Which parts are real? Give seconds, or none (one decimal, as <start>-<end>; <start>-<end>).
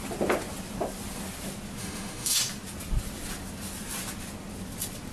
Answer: 0.0-1.8; 2.4-5.1